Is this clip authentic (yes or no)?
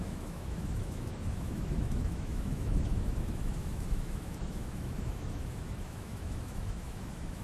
no